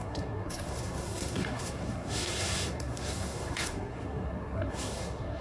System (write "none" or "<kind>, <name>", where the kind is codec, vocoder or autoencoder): codec, SNAC